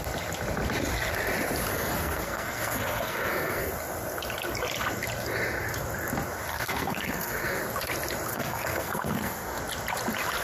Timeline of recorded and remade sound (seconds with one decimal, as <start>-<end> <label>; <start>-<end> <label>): 0.0-1.7 recorded; 1.7-3.7 remade; 3.7-6.5 recorded; 6.5-7.6 remade; 7.6-8.3 recorded; 8.3-9.6 remade; 9.6-10.4 recorded